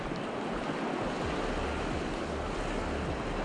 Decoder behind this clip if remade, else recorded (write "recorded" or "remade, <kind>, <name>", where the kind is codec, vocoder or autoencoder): recorded